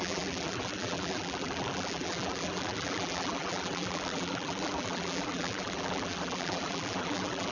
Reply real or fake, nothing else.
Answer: fake